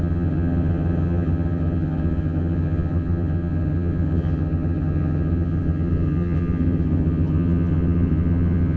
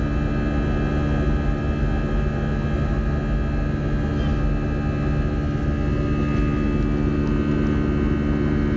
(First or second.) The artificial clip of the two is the first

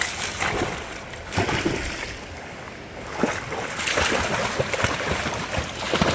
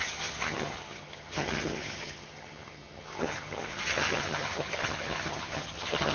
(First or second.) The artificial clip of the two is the second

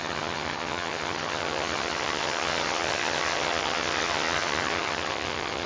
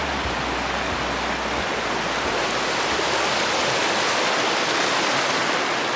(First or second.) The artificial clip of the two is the first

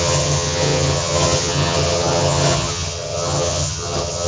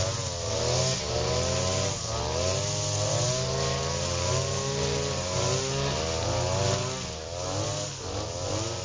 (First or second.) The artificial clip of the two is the first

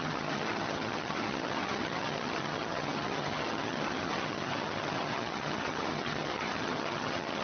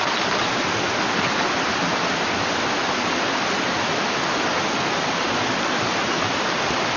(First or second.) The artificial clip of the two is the first